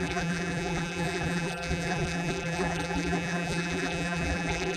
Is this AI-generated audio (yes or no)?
yes